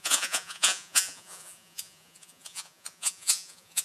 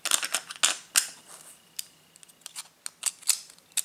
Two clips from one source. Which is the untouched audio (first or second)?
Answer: second